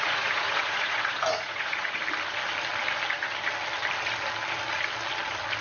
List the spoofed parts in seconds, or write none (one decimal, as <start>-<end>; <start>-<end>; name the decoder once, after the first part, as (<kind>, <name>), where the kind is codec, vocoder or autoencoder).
0.0-2.0 (vocoder, Vocos)